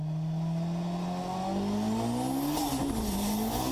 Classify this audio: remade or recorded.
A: recorded